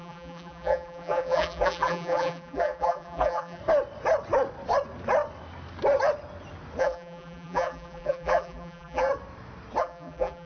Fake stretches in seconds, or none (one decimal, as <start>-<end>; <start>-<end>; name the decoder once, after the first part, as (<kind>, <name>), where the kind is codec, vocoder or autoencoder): 0.0-3.6 (vocoder, BigVGAN v2); 6.8-9.1; 9.8-10.5